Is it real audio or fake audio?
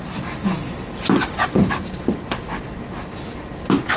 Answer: real